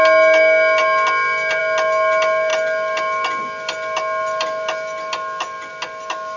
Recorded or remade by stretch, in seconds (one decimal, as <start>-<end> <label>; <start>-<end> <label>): 0.0-6.4 recorded